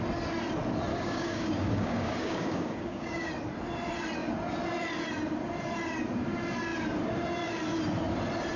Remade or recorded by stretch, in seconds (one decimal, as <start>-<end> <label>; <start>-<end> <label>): 0.0-0.9 recorded; 0.9-3.3 remade; 3.3-8.6 recorded

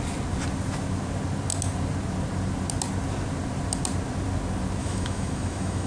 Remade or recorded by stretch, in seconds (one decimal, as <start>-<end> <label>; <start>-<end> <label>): 0.0-4.8 recorded; 4.8-5.9 remade

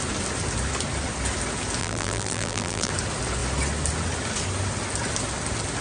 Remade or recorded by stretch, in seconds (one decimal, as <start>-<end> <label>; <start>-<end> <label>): 0.0-1.8 recorded; 1.8-2.9 remade; 2.9-5.8 recorded